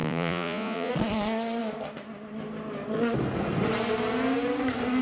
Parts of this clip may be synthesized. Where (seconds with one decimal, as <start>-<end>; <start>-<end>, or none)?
0.0-0.9